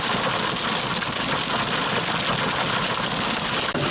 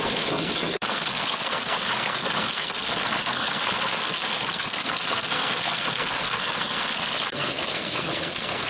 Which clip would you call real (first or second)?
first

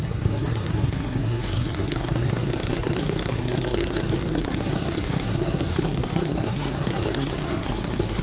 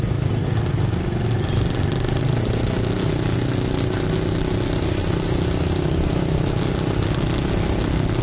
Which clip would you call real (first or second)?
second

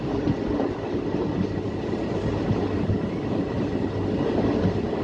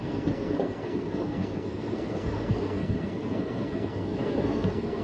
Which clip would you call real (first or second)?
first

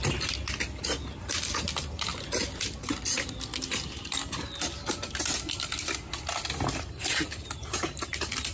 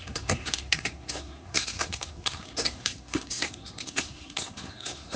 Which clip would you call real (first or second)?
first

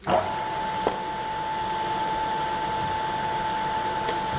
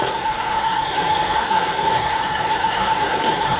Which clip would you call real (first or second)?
first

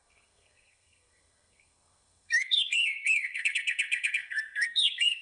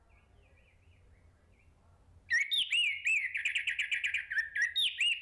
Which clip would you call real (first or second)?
second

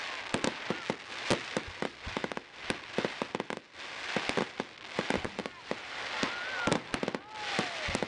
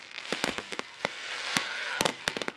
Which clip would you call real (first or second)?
first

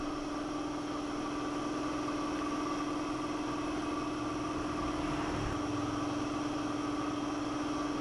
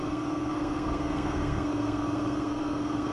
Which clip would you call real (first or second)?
first